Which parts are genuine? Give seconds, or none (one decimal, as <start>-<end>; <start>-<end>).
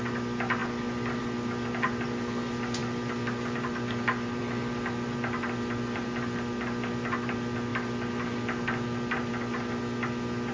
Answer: 0.0-0.6; 1.2-2.8; 4.4-7.7; 9.3-10.5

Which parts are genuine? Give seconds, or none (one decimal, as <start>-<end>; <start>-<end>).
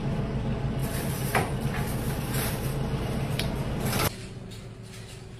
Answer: 0.0-0.8; 3.5-5.4